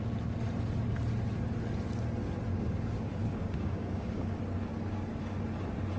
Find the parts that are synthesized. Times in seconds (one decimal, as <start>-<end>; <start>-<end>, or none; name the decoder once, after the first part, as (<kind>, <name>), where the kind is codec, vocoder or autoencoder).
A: 2.5-4.4 (codec, DAC)